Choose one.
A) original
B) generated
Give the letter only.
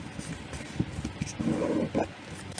A